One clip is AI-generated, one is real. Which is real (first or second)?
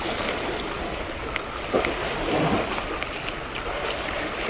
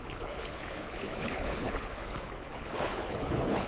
first